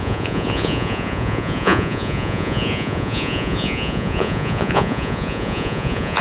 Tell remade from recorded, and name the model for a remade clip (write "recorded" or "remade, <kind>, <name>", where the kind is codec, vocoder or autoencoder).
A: remade, vocoder, Vocos